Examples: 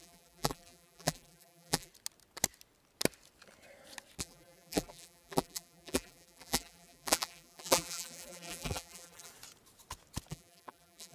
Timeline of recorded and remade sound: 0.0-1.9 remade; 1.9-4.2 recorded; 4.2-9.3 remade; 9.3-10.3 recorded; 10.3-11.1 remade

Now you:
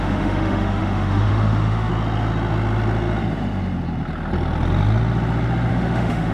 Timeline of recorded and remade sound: 0.0-1.9 remade; 1.9-5.7 recorded; 5.7-6.3 remade